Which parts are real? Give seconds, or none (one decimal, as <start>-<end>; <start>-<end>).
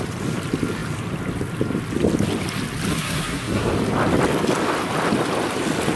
0.0-2.9; 3.7-6.0